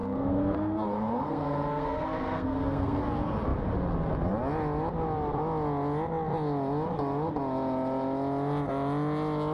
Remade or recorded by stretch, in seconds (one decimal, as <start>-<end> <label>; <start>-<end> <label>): 0.0-3.0 remade; 3.0-9.5 recorded